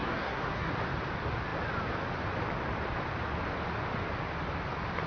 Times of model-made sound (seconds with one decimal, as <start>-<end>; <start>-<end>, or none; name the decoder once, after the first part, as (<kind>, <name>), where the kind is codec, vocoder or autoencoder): 0.0-0.7 (codec, SNAC)